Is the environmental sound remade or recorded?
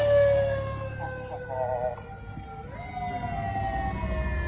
recorded